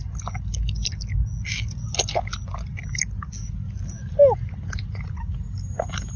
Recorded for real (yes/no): yes